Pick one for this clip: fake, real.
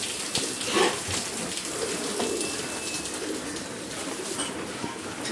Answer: real